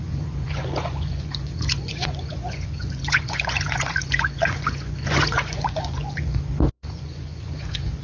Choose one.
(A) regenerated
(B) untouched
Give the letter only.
A